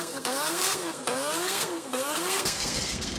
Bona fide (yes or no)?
no